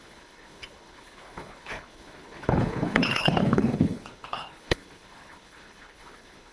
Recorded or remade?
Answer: remade